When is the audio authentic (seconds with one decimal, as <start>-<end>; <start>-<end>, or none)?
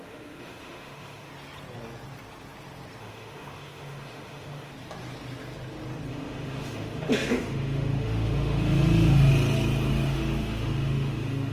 1.3-3.0; 4.7-6.1; 9.3-9.9